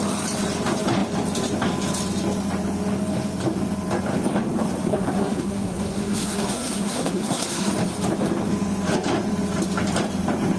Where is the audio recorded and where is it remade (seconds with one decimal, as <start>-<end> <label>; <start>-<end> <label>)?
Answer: 0.0-4.9 recorded; 4.9-7.7 remade; 7.7-10.6 recorded